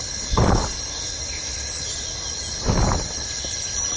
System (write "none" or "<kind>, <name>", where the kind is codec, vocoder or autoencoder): none